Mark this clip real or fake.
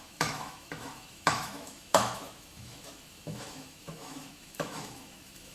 fake